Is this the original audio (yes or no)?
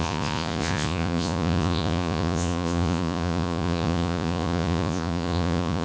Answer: no